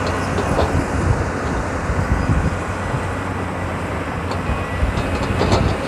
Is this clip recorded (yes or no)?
yes